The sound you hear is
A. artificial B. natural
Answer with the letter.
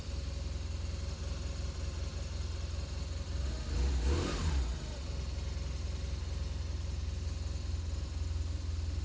B